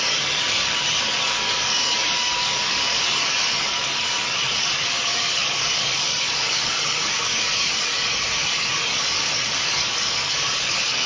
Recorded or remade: remade